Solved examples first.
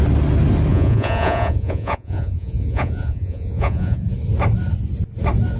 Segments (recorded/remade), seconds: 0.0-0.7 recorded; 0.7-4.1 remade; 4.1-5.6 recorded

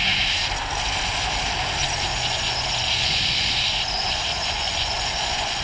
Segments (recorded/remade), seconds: 0.0-2.1 recorded; 2.1-5.6 remade

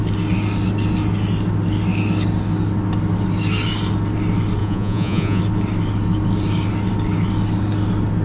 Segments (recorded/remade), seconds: 0.0-4.6 recorded; 4.6-5.4 remade; 5.4-8.2 recorded

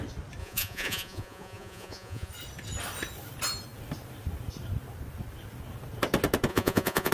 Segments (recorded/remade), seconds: 0.0-0.4 recorded; 0.4-2.3 remade; 2.3-6.5 recorded; 6.5-7.1 remade

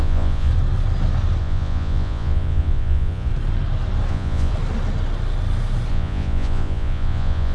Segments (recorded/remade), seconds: 0.0-0.5 remade; 0.5-1.4 recorded; 1.4-3.3 remade; 3.3-4.1 recorded; 4.1-4.5 remade; 4.5-5.9 recorded; 5.9-7.5 remade

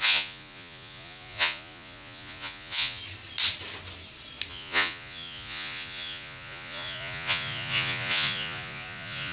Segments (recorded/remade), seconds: 0.0-3.0 remade; 3.0-4.5 recorded; 4.5-9.3 remade

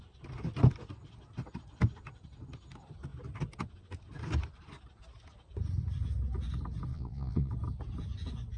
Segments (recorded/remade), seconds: 0.0-6.9 recorded; 6.9-7.5 remade; 7.5-8.6 recorded